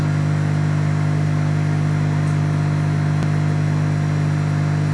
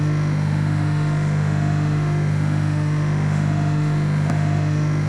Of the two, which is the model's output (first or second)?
second